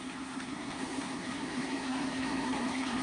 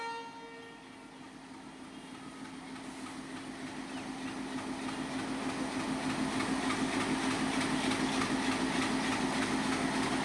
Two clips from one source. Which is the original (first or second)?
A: second